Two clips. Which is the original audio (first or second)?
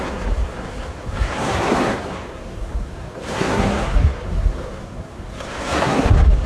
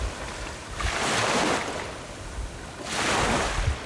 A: second